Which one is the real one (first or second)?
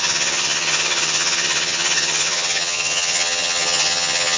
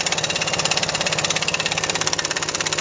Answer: second